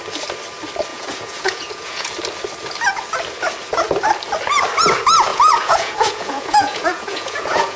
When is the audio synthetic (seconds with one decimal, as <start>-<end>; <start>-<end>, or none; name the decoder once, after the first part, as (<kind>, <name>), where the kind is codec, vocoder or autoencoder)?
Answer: 0.9-2.1 (vocoder, Vocos); 5.3-7.8